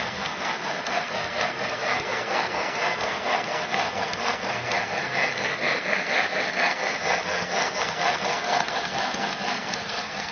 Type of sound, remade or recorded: remade